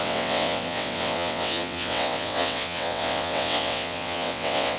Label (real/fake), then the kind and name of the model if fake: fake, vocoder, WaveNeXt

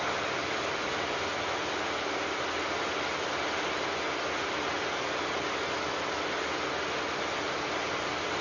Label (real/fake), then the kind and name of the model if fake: real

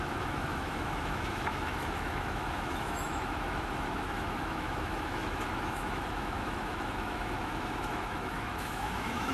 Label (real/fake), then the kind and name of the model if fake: fake, autoencoder, DAC-VAE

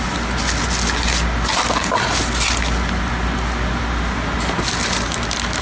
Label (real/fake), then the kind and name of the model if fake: real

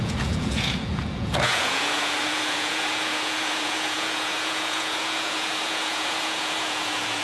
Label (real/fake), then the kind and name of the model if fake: fake, vocoder, Vocos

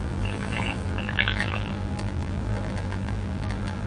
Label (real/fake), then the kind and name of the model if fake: fake, vocoder, BigVGAN v2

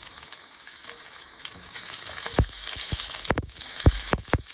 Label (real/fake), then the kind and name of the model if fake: fake, autoencoder, DAC-VAE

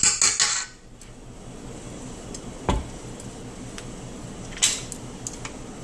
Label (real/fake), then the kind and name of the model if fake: real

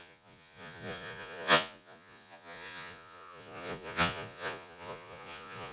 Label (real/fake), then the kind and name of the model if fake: fake, vocoder, Vocos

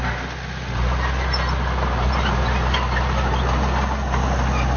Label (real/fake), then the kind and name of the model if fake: real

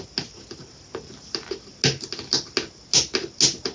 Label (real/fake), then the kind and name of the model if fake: real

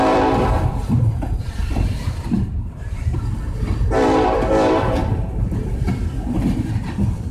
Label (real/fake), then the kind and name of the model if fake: fake, vocoder, BigVGAN v2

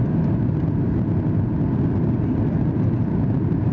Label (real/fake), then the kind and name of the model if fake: real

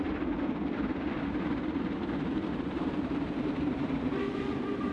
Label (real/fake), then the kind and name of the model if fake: fake, vocoder, BigVGAN v2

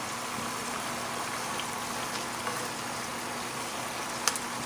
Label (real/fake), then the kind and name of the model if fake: real